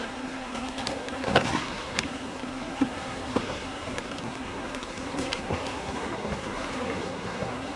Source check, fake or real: fake